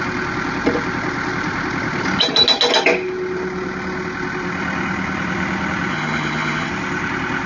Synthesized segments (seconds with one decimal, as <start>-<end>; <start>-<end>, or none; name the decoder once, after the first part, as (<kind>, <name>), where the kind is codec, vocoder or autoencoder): 5.9-6.7 (vocoder, HiFi-GAN)